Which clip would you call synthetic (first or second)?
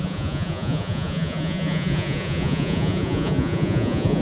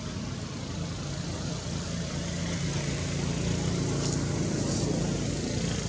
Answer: first